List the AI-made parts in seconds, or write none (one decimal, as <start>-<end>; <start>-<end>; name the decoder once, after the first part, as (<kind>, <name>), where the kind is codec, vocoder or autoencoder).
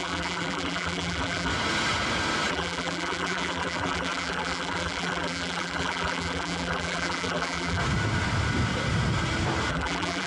0.0-1.5 (vocoder, BigVGAN v2); 2.5-7.8; 9.7-10.3